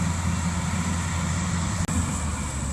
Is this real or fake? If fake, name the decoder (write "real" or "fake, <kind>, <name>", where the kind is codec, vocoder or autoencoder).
real